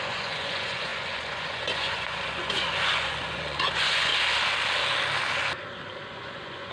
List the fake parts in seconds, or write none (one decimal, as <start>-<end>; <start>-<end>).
0.0-4.1; 6.1-6.7